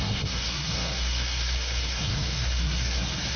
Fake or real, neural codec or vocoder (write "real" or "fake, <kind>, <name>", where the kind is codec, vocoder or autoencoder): fake, codec, SNAC